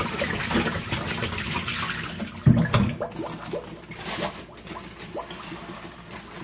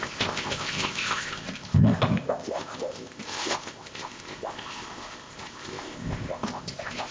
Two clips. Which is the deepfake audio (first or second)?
second